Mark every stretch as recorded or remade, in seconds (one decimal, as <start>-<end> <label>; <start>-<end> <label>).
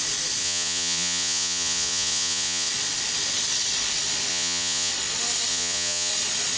0.0-0.4 recorded; 0.4-2.7 remade; 2.7-4.3 recorded; 4.3-4.9 remade; 4.9-5.5 recorded; 5.5-6.1 remade; 6.1-6.6 recorded